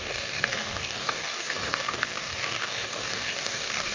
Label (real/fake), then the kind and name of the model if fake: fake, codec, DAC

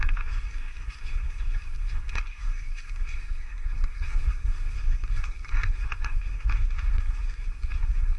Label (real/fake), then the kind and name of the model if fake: fake, codec, SNAC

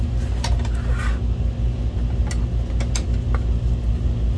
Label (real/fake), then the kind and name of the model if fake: real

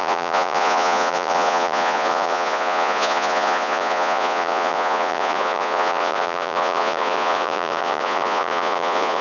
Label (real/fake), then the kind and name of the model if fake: fake, vocoder, Vocos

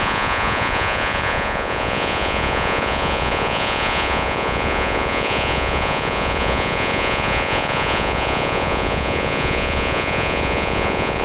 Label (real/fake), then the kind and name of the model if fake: fake, vocoder, Vocos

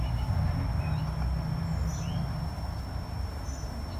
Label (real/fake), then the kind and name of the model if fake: real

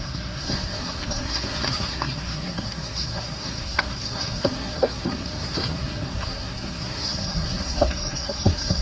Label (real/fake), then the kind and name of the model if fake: fake, codec, SNAC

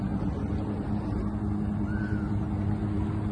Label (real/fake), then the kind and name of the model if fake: real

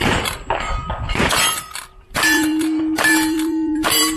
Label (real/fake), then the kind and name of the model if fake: fake, vocoder, BigVGAN v2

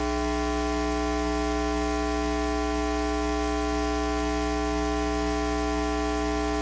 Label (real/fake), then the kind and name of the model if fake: real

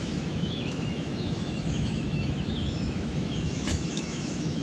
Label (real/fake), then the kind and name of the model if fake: fake, autoencoder, DAC-VAE